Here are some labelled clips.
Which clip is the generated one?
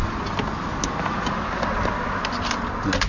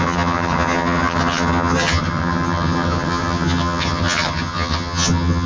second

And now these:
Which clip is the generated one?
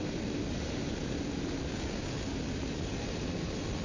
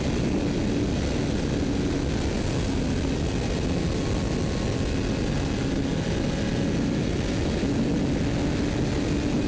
first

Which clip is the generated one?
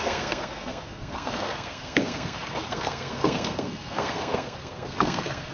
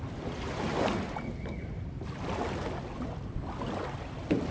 first